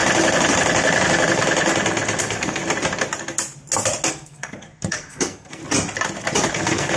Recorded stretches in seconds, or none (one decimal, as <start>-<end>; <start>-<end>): 0.0-2.2; 2.6-4.1; 5.6-6.5